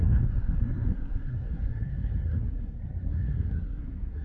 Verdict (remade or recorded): remade